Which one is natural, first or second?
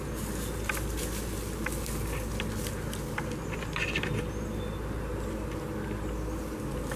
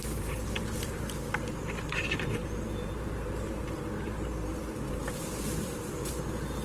first